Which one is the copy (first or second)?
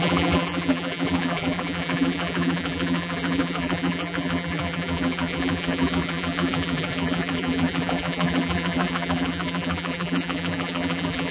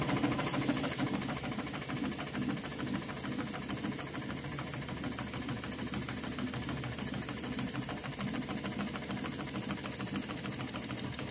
first